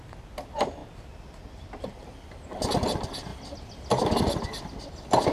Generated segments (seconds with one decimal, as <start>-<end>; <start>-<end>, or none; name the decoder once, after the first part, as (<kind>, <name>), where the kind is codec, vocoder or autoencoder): none